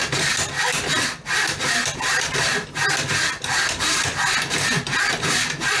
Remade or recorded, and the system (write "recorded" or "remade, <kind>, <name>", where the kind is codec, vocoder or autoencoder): recorded